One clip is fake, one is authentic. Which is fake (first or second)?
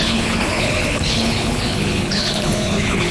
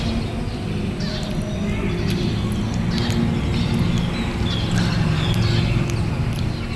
first